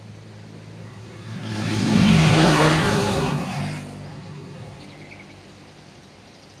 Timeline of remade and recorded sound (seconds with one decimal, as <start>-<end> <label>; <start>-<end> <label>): 0.0-0.8 recorded; 0.8-3.6 remade; 3.6-4.1 recorded; 4.1-4.8 remade; 4.8-6.6 recorded